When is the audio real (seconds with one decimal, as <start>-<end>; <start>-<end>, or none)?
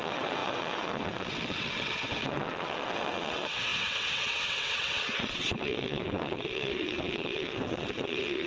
none